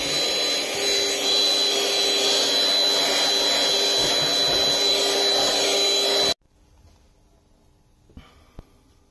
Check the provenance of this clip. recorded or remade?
recorded